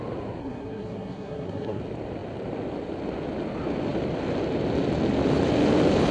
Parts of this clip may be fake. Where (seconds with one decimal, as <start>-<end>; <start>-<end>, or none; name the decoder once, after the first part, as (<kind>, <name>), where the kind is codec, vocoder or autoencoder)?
0.4-1.8 (codec, SNAC)